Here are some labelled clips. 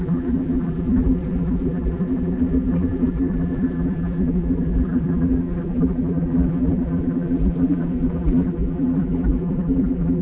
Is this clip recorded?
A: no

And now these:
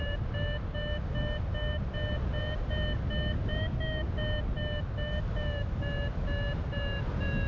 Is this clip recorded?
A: yes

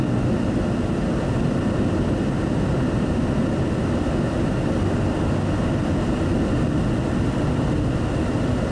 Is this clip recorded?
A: yes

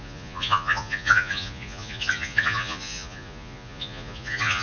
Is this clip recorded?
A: no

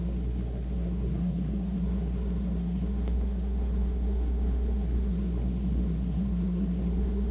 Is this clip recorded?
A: no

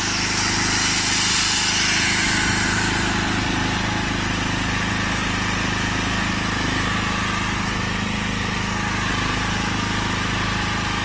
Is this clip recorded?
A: yes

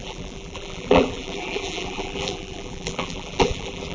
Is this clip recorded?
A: no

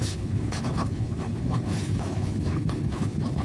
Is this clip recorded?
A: no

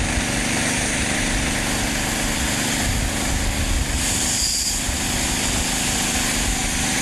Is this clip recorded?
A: yes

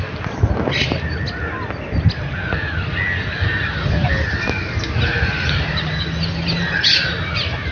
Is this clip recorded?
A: yes